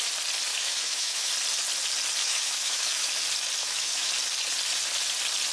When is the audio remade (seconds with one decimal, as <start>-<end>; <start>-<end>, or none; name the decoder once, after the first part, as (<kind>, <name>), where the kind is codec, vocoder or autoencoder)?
0.5-1.3 (autoencoder, DAC-VAE); 2.2-3.1; 3.6-4.1

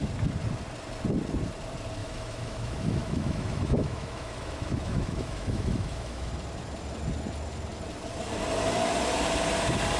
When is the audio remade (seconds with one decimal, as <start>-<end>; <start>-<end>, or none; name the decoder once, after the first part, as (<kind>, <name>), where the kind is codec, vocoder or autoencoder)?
2.0-6.3 (autoencoder, DAC-VAE)

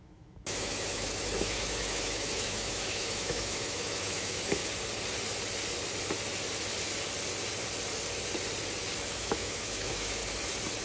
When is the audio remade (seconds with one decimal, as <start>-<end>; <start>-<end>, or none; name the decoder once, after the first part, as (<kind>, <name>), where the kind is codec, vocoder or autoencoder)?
0.0-4.6 (autoencoder, DAC-VAE); 9.1-10.2

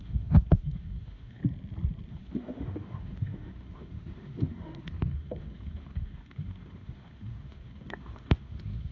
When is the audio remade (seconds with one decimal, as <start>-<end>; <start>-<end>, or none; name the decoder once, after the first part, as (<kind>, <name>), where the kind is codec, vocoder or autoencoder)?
0.0-1.4 (autoencoder, DAC-VAE); 2.1-8.9

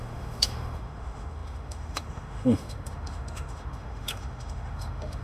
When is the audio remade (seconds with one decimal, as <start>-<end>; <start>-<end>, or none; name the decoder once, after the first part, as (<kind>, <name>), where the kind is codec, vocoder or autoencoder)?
0.0-5.2 (autoencoder, DAC-VAE)

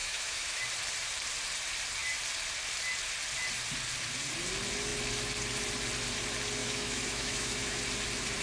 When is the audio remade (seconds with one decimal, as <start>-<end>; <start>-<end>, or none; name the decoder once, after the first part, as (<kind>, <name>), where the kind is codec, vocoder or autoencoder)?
0.0-0.6 (autoencoder, DAC-VAE); 6.6-7.8

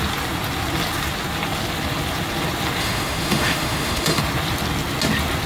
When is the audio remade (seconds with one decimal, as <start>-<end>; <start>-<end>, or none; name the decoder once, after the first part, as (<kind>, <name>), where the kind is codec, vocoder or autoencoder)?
2.8-4.2 (autoencoder, DAC-VAE)